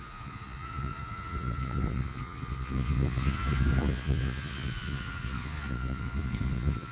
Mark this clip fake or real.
fake